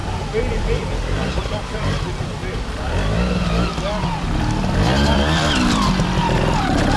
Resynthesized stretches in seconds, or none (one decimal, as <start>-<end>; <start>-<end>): 0.5-2.4; 6.0-7.0